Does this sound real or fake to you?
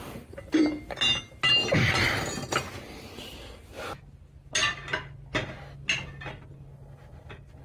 real